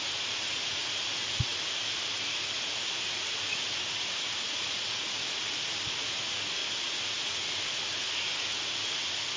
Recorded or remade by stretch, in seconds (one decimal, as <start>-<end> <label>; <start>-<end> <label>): 0.0-6.6 remade; 6.6-7.3 recorded; 7.3-9.4 remade